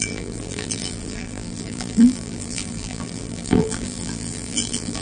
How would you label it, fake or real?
fake